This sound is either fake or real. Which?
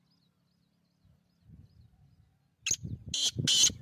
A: real